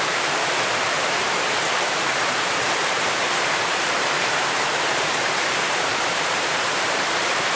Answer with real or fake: fake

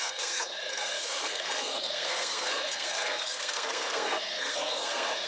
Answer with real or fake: fake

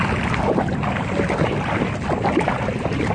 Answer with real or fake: real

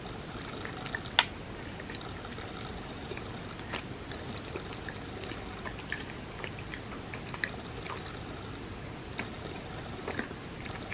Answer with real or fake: real